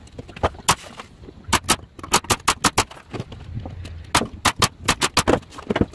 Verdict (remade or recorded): recorded